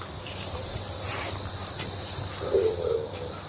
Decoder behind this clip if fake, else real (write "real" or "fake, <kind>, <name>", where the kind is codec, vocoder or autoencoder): fake, vocoder, BigVGAN v2